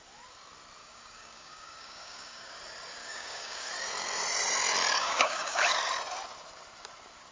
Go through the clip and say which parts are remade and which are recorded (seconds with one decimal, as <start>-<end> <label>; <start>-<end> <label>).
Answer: 0.0-0.8 recorded; 0.8-2.6 remade; 2.6-3.0 recorded; 3.0-3.7 remade; 3.7-5.0 recorded; 5.0-5.6 remade; 5.6-7.3 recorded